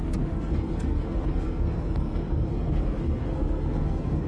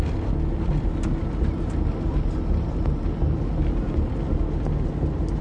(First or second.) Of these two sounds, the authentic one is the second